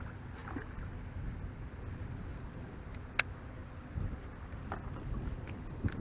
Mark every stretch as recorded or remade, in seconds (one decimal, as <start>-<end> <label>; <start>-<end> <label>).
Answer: 0.0-0.4 recorded; 0.4-1.8 remade; 1.8-6.0 recorded